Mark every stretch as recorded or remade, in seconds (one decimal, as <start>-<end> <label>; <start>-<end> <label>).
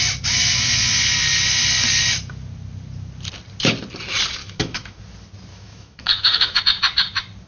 0.0-4.4 recorded; 4.4-5.0 remade; 5.0-5.5 recorded; 5.5-6.6 remade; 6.6-7.5 recorded